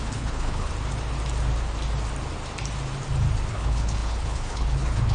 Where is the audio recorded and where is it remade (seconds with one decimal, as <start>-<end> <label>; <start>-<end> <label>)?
0.0-0.7 remade; 0.7-3.5 recorded; 3.5-5.1 remade